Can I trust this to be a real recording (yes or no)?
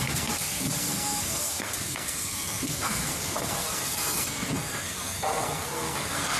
no